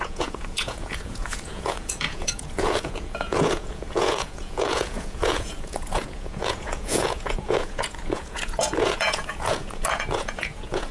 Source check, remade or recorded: remade